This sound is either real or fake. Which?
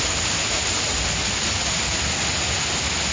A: real